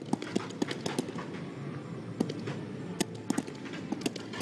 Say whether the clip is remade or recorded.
recorded